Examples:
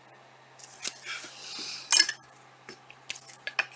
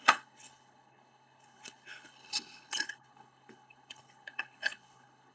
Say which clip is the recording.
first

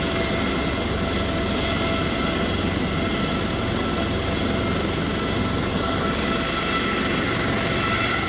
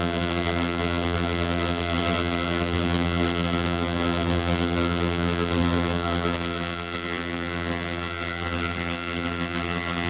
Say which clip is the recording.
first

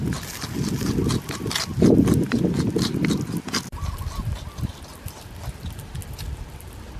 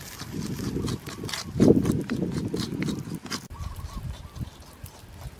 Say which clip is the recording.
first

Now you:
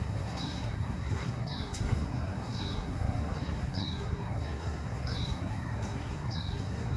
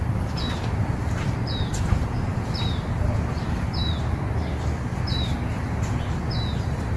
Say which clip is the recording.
second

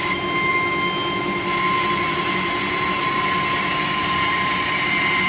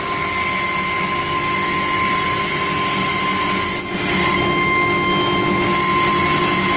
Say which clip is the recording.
second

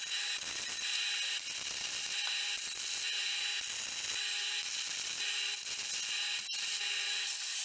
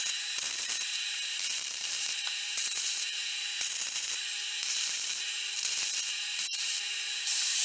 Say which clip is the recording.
first